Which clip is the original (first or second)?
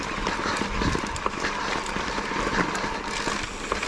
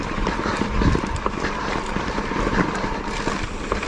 first